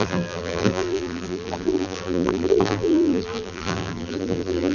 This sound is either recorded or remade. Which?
remade